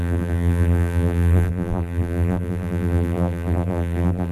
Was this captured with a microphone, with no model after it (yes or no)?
no